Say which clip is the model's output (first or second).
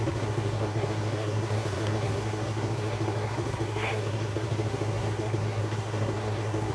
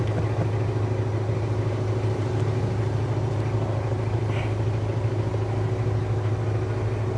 first